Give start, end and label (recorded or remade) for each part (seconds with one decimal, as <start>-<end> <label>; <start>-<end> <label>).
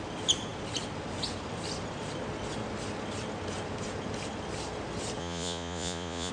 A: 0.0-5.2 recorded; 5.2-6.3 remade